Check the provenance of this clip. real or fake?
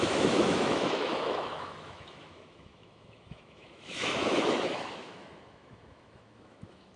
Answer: fake